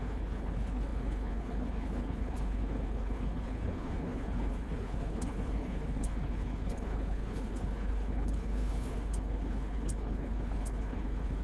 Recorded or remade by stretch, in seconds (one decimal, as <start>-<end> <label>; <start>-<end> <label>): 0.0-11.4 remade